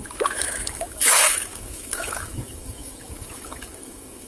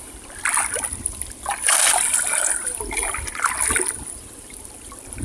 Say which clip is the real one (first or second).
second